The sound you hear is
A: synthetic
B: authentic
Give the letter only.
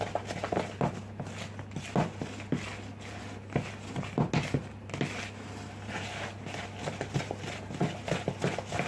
B